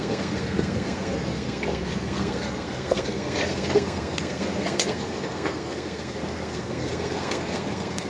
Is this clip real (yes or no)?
no